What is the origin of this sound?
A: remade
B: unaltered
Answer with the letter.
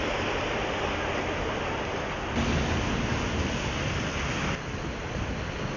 B